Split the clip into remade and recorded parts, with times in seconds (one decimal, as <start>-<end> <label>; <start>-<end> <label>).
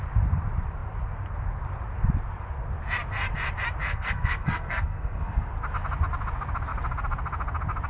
0.0-3.8 recorded; 3.8-5.5 remade; 5.5-7.9 recorded